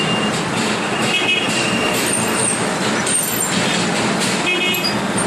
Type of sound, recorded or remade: recorded